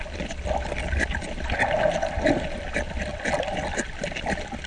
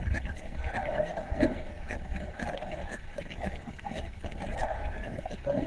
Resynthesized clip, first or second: second